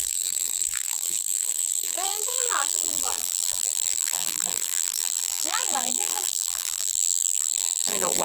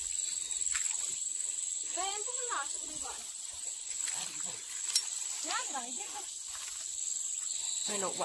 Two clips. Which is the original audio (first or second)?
second